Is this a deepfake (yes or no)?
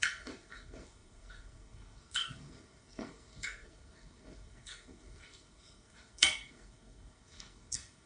yes